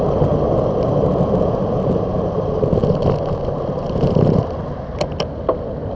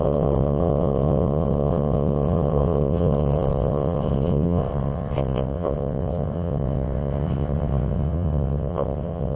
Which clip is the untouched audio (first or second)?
first